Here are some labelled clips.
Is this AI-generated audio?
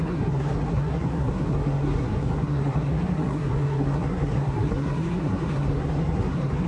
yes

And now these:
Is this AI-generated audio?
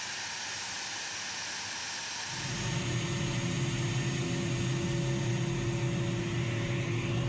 no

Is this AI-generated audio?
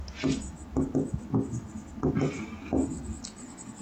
no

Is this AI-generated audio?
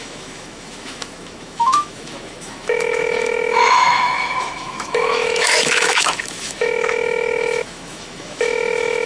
yes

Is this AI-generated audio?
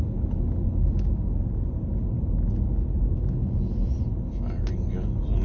no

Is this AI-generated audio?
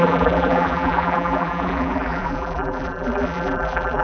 yes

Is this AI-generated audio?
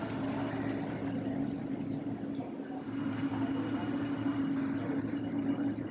no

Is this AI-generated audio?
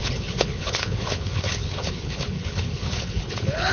yes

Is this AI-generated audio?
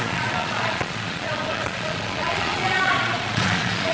yes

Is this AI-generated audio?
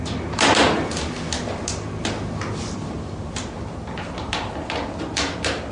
no